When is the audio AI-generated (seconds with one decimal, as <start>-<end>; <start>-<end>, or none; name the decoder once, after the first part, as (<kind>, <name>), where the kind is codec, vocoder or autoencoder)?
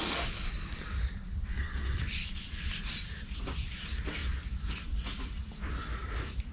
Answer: 1.5-2.0 (codec, SNAC)